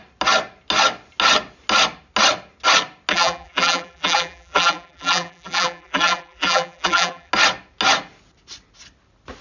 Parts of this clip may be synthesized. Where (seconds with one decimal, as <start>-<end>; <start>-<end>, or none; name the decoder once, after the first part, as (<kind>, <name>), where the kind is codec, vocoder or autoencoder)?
3.1-7.3 (vocoder, BigVGAN v2)

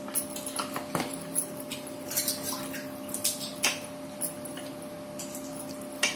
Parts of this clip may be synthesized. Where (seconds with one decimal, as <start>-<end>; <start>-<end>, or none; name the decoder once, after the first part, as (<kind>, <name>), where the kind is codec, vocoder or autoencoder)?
none

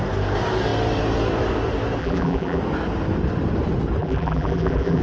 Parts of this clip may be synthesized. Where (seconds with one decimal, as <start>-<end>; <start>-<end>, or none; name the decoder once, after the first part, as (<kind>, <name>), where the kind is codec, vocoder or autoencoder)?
2.0-2.6 (vocoder, BigVGAN v2); 4.0-5.0

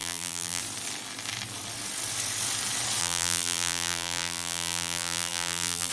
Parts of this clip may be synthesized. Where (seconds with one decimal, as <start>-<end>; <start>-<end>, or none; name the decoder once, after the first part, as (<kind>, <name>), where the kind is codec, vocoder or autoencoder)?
0.0-0.6 (vocoder, BigVGAN v2); 3.0-5.9

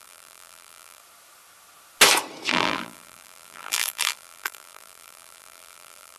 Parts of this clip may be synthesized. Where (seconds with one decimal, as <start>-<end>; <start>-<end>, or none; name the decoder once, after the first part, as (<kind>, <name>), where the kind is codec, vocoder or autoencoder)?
0.0-1.0 (vocoder, BigVGAN v2); 2.5-6.2

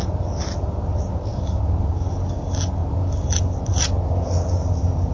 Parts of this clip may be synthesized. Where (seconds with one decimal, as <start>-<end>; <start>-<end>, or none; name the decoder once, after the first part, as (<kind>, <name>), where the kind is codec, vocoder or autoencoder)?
1.3-1.8 (vocoder, BigVGAN v2); 2.8-3.7